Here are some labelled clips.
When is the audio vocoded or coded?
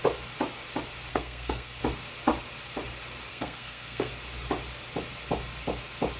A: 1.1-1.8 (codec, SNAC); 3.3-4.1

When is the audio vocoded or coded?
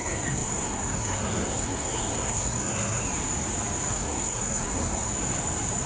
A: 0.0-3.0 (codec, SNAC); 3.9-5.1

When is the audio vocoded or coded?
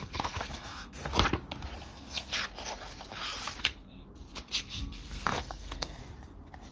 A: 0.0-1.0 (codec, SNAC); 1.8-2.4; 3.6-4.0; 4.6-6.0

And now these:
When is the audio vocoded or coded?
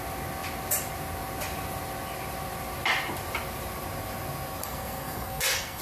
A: 4.6-5.8 (codec, SNAC)